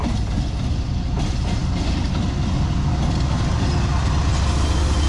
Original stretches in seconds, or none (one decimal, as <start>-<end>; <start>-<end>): 0.0-5.1